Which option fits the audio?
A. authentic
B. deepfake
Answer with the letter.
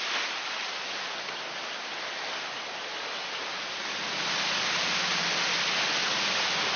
A